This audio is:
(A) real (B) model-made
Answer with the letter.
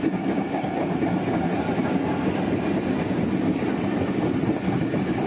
A